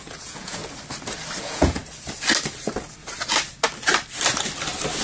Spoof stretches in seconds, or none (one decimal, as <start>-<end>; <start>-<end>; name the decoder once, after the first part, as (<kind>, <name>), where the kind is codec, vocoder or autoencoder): 0.0-0.6 (vocoder, Vocos); 1.4-1.8